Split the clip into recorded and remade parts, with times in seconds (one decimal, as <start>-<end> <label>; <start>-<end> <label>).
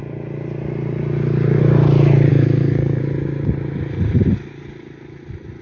0.0-2.3 recorded; 2.3-3.0 remade; 3.0-5.6 recorded